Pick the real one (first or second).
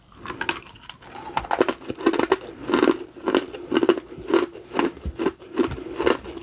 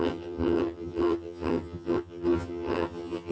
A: first